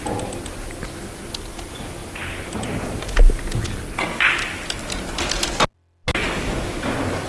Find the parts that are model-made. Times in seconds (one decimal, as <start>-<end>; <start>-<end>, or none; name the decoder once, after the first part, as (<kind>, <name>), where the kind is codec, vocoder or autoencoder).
none